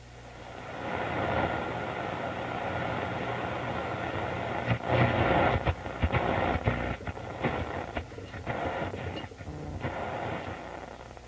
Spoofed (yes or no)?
no